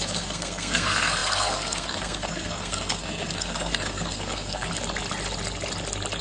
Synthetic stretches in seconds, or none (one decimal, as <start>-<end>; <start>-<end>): 0.0-4.7